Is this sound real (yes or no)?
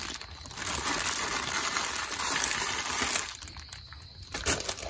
yes